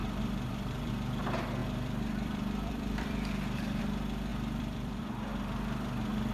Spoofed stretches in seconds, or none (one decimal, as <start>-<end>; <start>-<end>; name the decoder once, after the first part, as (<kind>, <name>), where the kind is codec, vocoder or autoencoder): 0.0-0.9 (vocoder, BigVGAN v2); 1.6-3.8; 4.3-5.0